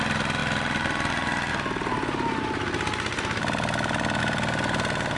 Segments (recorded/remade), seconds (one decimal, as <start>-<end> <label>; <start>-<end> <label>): 0.0-5.2 recorded